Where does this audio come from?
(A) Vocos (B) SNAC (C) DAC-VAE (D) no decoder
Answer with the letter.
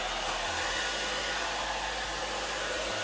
D